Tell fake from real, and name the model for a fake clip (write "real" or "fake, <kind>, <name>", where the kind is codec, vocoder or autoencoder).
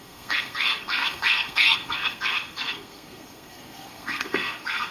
fake, codec, SNAC